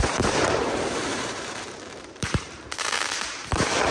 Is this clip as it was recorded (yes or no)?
no